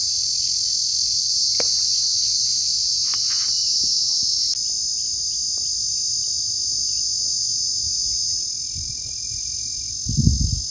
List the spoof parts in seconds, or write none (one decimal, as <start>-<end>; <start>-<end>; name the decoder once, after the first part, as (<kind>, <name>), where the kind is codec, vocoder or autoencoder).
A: none